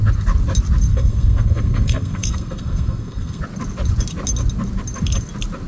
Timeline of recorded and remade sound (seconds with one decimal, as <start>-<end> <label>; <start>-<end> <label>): 0.0-0.9 recorded; 0.9-3.4 remade; 3.4-5.7 recorded